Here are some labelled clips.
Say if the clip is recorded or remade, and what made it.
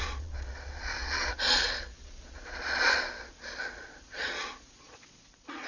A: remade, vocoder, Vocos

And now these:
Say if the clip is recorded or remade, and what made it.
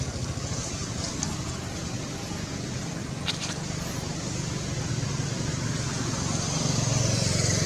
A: recorded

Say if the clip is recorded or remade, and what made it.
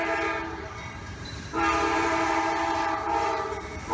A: remade, vocoder, BigVGAN v2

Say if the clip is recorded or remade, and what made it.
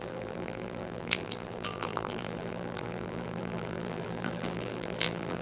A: remade, vocoder, BigVGAN v2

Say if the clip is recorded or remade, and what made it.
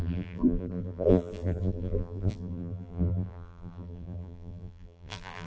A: remade, vocoder, BigVGAN v2